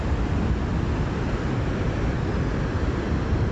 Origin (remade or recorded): recorded